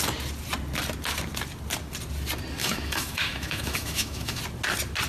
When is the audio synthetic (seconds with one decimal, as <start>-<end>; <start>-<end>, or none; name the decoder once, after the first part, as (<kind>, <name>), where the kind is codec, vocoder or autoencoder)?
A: 2.6-4.4 (autoencoder, DAC-VAE)